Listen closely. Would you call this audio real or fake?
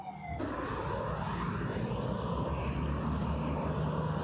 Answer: real